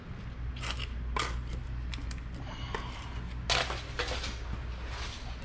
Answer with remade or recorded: recorded